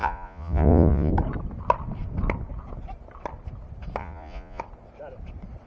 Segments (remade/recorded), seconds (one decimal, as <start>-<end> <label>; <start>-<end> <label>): 0.0-1.1 remade; 1.1-4.0 recorded; 4.0-4.6 remade; 4.6-5.7 recorded